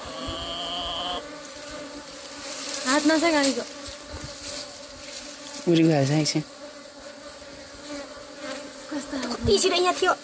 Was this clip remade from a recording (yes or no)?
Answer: no